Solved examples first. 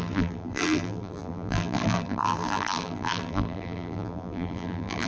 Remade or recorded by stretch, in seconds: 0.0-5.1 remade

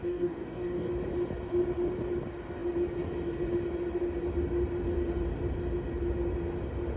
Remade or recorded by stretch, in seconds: 0.0-0.9 remade; 0.9-7.0 recorded

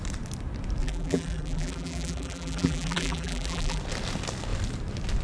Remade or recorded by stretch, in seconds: 0.0-0.8 recorded; 0.8-3.8 remade; 3.8-5.2 recorded